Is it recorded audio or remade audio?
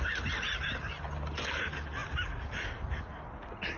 recorded